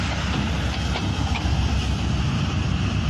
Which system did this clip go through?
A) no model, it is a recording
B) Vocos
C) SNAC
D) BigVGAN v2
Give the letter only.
A